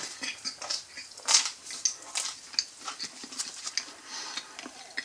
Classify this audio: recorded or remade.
recorded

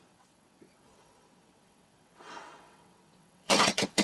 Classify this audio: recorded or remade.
remade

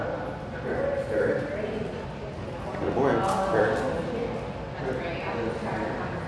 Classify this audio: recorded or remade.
recorded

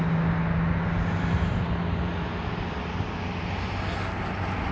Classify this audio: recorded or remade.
recorded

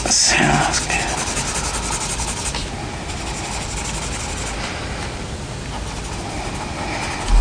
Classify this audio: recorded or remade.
recorded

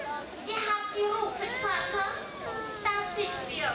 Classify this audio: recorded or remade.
recorded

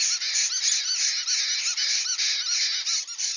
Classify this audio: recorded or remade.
recorded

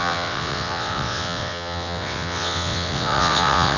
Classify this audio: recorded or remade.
remade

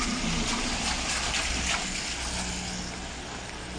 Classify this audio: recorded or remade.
recorded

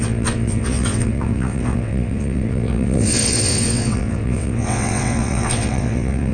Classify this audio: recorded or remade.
remade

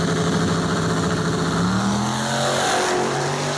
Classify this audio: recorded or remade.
recorded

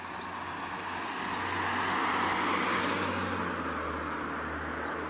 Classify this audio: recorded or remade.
recorded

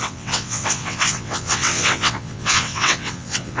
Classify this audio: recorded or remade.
remade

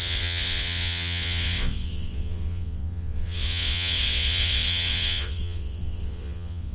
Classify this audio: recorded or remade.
remade